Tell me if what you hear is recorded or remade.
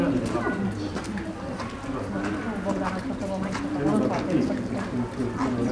recorded